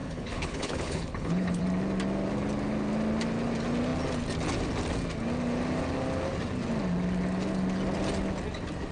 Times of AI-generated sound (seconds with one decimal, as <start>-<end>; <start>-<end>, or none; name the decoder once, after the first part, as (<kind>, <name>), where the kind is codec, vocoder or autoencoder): 0.0-1.6 (codec, HILCodec)